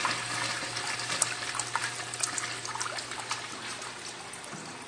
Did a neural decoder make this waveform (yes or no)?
no